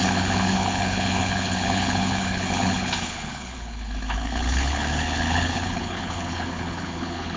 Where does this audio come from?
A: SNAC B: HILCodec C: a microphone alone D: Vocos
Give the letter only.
B